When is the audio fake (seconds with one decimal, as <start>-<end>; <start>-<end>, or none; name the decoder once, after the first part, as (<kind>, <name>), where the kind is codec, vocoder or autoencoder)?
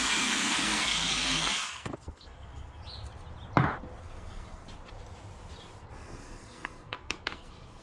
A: 0.0-2.8 (codec, SNAC); 4.0-4.6; 5.9-7.8